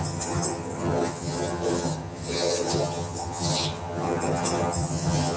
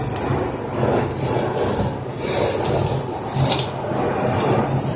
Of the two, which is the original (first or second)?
second